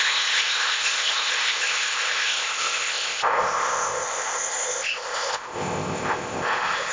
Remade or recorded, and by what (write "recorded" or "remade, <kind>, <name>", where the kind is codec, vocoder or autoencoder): remade, codec, ZipCodec